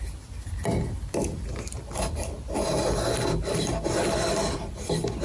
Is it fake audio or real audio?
real